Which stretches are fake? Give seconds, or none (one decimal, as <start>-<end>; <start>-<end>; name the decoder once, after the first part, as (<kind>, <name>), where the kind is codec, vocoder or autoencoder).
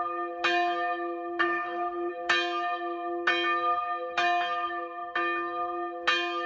1.4-2.1 (codec, SNAC)